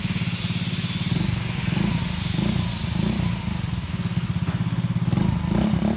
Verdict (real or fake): real